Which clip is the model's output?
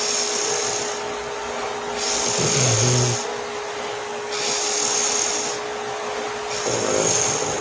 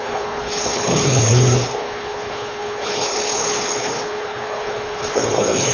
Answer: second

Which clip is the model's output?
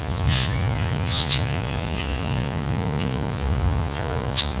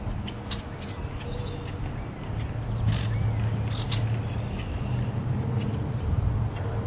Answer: first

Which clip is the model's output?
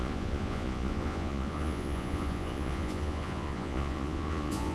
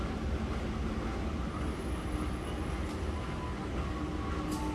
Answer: first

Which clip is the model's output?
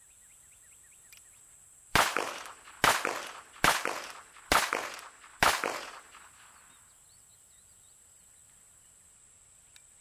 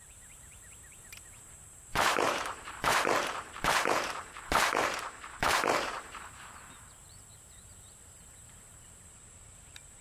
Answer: second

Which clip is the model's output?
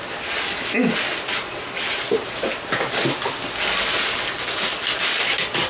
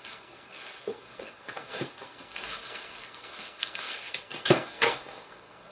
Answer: second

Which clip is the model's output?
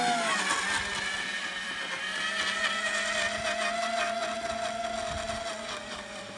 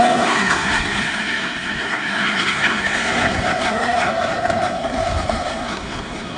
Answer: second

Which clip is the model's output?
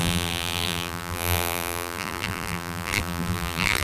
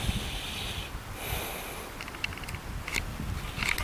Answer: first